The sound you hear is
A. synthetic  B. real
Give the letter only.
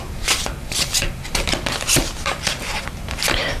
A